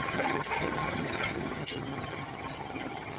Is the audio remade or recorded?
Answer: remade